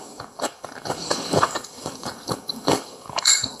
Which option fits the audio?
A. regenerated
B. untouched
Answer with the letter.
A